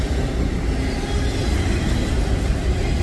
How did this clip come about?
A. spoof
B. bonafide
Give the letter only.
B